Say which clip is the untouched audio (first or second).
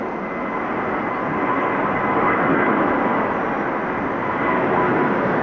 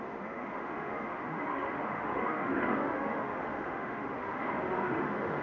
first